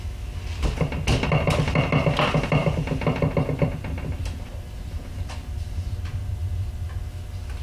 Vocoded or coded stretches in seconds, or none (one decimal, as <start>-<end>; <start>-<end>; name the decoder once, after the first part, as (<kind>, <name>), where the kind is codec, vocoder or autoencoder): 2.6-6.2 (vocoder, BigVGAN v2)